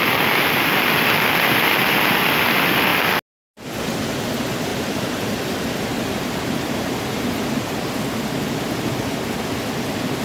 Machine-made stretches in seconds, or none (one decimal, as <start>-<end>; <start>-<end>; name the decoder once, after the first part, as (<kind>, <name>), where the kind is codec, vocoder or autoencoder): 4.7-7.3 (vocoder, BigVGAN v2)